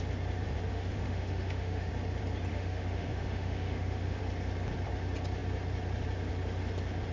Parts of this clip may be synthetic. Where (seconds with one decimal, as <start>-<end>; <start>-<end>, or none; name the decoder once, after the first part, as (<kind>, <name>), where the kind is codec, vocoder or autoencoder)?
0.7-1.9 (autoencoder, DAC-VAE); 2.5-4.2